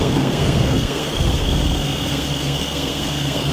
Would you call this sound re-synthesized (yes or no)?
yes